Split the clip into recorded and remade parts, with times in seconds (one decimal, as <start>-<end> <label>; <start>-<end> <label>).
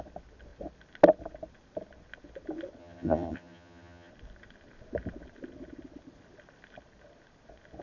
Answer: 0.0-2.8 recorded; 2.8-4.1 remade; 4.1-7.8 recorded